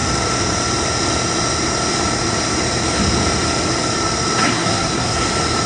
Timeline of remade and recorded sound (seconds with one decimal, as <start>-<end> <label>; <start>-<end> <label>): 0.0-4.4 recorded; 4.4-5.3 remade; 5.3-5.7 recorded